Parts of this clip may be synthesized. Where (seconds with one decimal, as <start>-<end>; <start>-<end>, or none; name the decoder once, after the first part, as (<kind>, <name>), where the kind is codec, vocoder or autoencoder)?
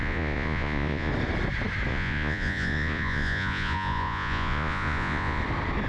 0.0-1.1 (vocoder, Vocos); 1.9-5.4